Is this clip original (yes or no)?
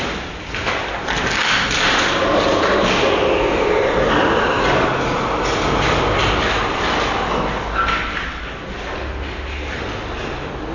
yes